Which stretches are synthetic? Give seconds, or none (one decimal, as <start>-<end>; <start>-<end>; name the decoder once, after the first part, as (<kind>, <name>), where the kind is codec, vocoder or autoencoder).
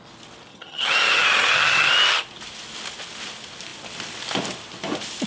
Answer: 0.5-1.9 (vocoder, HiFi-GAN)